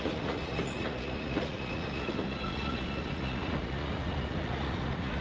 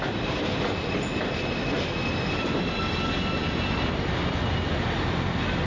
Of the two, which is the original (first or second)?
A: second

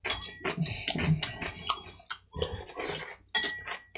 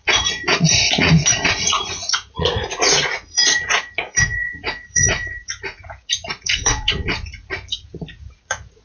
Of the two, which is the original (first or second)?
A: first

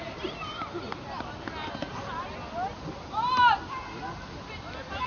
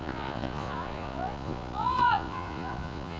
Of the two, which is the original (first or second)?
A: first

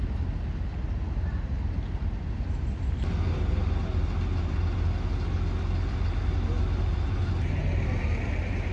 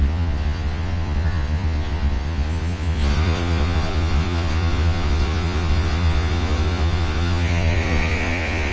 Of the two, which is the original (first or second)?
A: first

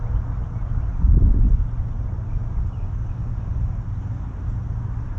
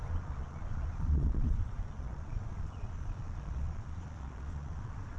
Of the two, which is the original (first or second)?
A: first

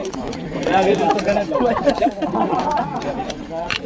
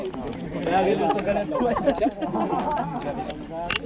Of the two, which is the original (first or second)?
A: second